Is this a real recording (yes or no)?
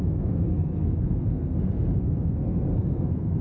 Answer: no